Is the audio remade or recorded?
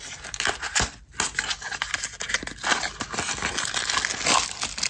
recorded